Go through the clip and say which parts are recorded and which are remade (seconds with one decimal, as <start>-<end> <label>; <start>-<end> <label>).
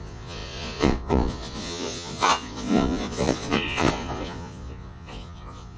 0.0-5.8 remade